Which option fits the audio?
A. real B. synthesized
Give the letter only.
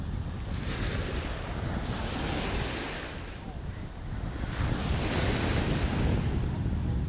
A